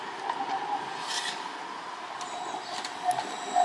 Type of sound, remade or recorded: recorded